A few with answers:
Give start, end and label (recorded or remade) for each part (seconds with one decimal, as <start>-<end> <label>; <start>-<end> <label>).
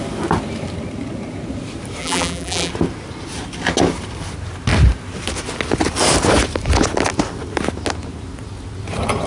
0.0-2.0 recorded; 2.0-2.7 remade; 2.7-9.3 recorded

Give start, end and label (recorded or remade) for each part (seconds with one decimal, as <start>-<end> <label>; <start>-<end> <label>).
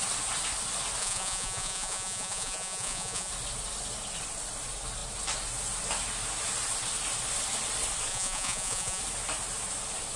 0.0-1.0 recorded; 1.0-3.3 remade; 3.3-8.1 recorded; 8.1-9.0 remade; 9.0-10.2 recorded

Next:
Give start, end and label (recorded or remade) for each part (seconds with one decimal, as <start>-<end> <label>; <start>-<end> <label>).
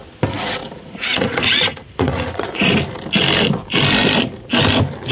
0.0-0.6 recorded; 0.6-2.7 remade; 2.7-5.1 recorded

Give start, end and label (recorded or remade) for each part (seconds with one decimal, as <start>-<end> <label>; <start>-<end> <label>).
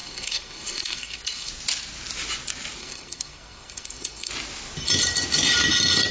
0.0-1.5 remade; 1.5-2.8 recorded; 2.8-4.3 remade; 4.3-6.1 recorded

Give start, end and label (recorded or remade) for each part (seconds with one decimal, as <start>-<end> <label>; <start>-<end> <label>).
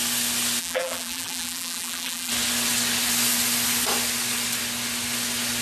0.0-0.6 recorded; 0.6-2.3 remade; 2.3-5.6 recorded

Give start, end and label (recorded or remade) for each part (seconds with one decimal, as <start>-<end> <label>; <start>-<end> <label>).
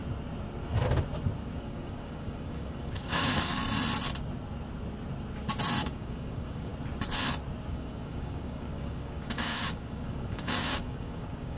0.0-1.6 recorded; 1.6-3.6 remade; 3.6-5.8 recorded; 5.8-6.7 remade; 6.7-7.7 recorded; 7.7-11.6 remade